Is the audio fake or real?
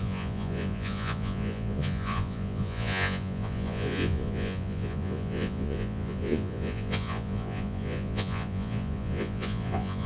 fake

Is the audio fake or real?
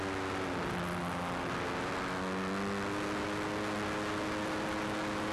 real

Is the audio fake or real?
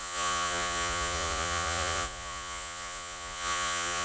fake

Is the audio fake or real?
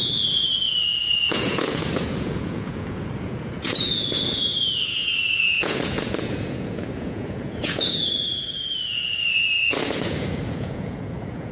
fake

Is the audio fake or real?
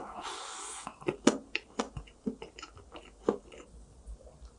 real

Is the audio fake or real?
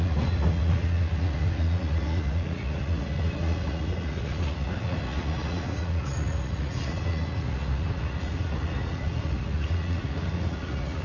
fake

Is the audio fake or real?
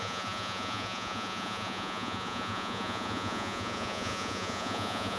fake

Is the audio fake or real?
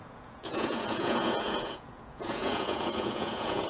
fake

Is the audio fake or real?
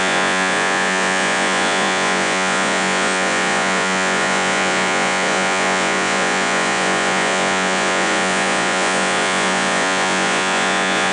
fake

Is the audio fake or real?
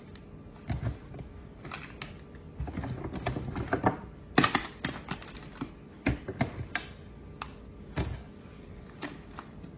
real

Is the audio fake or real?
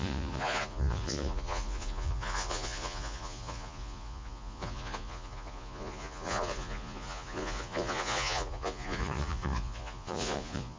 fake